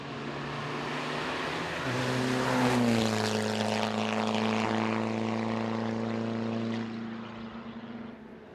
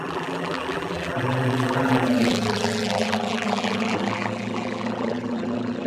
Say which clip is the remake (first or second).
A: second